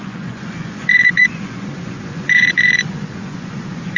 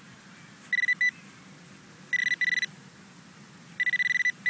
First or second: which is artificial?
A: first